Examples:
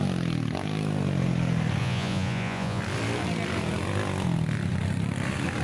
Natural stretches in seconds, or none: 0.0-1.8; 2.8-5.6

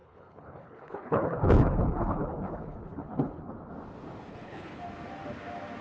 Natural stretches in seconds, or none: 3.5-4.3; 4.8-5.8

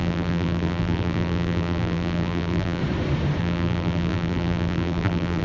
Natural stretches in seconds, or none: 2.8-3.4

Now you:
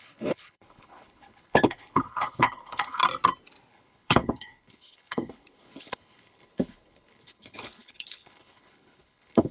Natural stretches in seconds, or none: 3.0-3.7

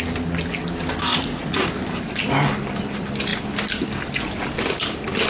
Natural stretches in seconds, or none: 0.0-1.1; 1.7-5.3